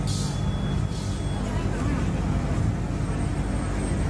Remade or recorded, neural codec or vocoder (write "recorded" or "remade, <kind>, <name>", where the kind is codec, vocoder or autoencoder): recorded